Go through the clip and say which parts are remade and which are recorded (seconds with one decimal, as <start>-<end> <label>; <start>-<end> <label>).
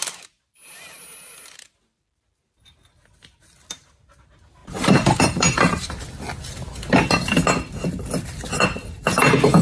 0.0-4.6 recorded; 4.6-6.1 remade; 6.1-9.6 recorded